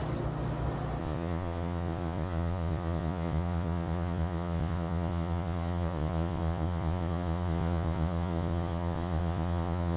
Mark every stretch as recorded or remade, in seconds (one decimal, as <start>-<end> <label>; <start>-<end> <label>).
0.0-1.0 recorded; 1.0-10.0 remade